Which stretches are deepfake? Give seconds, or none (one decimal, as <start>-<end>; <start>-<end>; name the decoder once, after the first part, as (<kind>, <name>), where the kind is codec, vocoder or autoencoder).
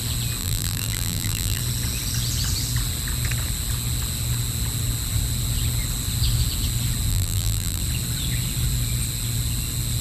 0.4-1.6 (vocoder, BigVGAN v2); 7.1-7.8